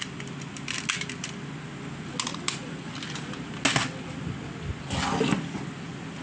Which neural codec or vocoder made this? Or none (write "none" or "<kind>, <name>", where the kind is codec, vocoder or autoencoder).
none